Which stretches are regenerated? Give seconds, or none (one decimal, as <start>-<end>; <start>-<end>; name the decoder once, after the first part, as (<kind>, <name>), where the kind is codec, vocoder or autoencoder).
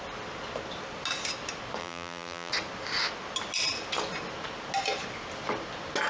1.8-2.5 (vocoder, BigVGAN v2)